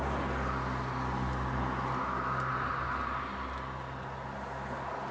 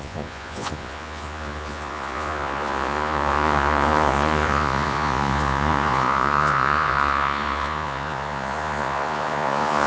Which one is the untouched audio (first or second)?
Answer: first